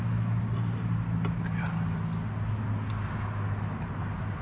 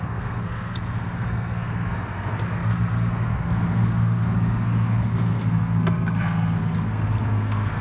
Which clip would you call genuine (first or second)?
first